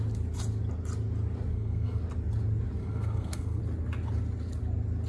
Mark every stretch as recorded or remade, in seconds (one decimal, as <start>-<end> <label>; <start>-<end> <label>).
0.0-1.5 recorded; 1.5-2.0 remade; 2.0-2.8 recorded; 2.8-3.6 remade; 3.6-5.1 recorded